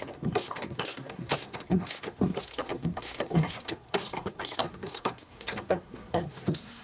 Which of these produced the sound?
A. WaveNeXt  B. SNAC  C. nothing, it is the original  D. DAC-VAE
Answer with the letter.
B